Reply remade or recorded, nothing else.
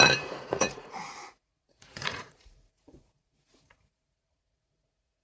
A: remade